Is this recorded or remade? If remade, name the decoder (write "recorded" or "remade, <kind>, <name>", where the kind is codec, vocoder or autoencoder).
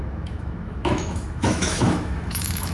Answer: remade, autoencoder, DAC-VAE